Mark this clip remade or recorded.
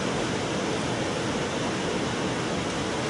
recorded